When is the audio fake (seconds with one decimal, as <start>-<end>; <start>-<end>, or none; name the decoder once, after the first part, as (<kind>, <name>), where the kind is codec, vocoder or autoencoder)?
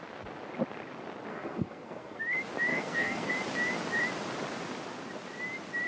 1.3-2.2 (codec, SNAC); 2.7-3.3